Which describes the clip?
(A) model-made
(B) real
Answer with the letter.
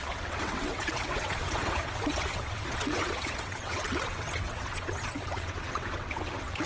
A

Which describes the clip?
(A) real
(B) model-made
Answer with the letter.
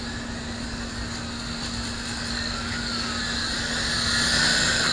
A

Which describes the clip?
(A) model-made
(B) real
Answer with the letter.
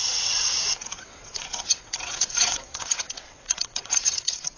A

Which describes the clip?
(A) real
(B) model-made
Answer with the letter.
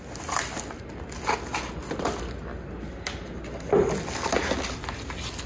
A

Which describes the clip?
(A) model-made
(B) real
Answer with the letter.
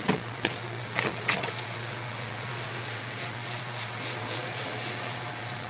A